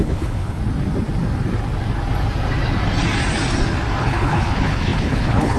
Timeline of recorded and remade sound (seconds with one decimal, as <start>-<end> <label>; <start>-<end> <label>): 0.0-0.6 remade; 0.6-4.0 recorded; 4.0-5.6 remade